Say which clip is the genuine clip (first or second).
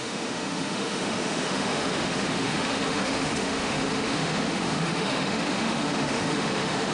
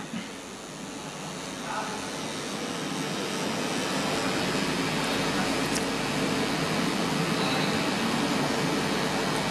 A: second